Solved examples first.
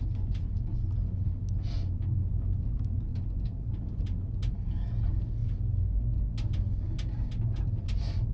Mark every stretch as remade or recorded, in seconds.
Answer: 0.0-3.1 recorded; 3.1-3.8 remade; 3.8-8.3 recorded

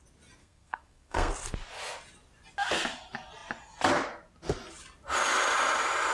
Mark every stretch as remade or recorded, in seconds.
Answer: 0.0-0.4 recorded; 0.4-1.3 remade; 1.3-6.1 recorded

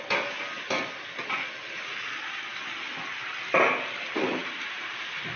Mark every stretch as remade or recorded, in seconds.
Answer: 0.0-4.4 recorded; 4.4-5.0 remade; 5.0-5.4 recorded

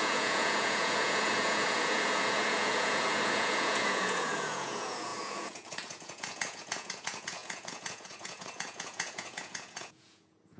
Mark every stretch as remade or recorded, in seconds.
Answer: 0.0-10.6 remade

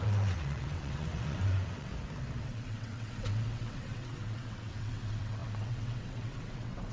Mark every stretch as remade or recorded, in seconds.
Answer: 0.0-1.9 remade; 1.9-2.4 recorded; 2.4-6.9 remade

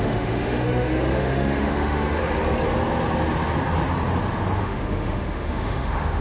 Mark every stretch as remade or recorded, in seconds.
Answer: 0.0-2.2 remade; 2.2-4.6 recorded; 4.6-6.2 remade

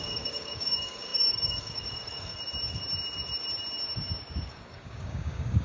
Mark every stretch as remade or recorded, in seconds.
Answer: 0.0-2.3 remade; 2.3-4.5 recorded; 4.5-5.6 remade